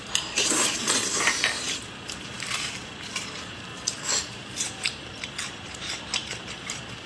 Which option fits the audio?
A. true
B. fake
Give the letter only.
B